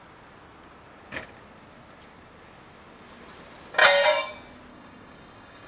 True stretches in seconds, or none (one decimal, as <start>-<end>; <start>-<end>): 0.0-3.8; 4.3-4.7